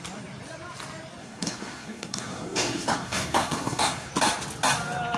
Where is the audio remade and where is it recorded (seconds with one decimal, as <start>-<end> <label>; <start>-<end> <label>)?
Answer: 0.0-1.2 recorded; 1.2-4.1 remade; 4.1-5.2 recorded